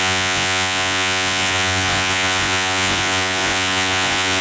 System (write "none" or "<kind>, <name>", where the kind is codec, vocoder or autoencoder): vocoder, Vocos